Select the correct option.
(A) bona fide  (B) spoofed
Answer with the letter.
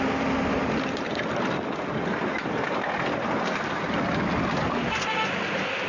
A